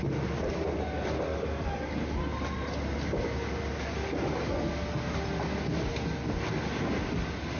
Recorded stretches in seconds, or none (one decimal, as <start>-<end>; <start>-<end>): 0.0-7.6